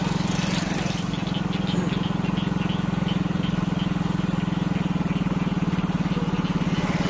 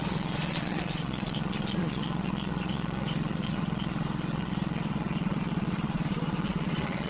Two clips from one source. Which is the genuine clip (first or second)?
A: first